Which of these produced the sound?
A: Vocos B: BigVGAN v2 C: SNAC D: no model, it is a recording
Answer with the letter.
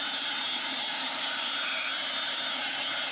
B